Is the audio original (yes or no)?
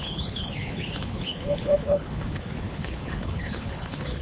no